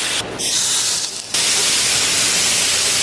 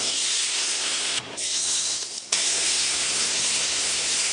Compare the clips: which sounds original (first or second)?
first